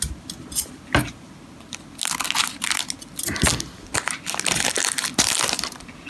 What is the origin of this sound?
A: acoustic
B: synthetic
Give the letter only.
A